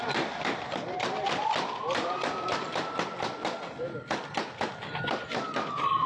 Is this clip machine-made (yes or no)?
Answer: yes